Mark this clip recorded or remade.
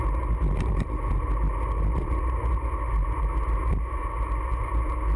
recorded